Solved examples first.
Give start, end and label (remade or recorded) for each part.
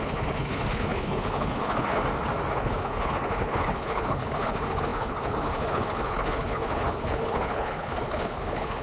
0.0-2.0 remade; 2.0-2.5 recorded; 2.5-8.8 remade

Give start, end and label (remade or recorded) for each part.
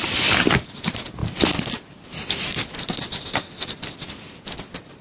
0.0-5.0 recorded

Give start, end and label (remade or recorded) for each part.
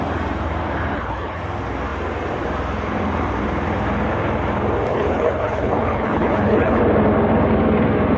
0.0-0.9 recorded; 0.9-1.4 remade; 1.4-4.9 recorded; 4.9-6.8 remade; 6.8-8.2 recorded